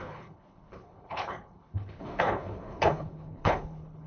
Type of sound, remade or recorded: remade